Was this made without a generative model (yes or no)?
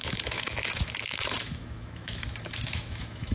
no